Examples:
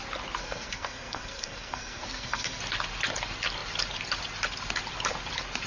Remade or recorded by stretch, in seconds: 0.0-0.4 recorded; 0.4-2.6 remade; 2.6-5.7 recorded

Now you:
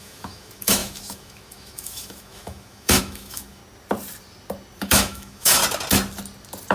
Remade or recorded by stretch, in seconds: 0.0-3.6 remade; 3.6-4.8 recorded; 4.8-5.6 remade; 5.6-6.7 recorded

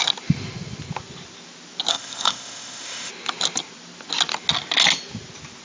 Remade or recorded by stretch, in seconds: 0.0-1.9 recorded; 1.9-3.1 remade; 3.1-5.6 recorded